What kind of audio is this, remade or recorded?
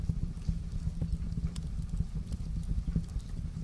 recorded